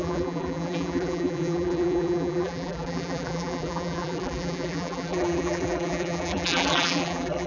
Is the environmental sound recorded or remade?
remade